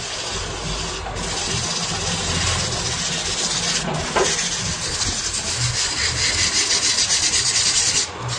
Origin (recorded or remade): recorded